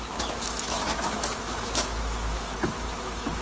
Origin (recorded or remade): remade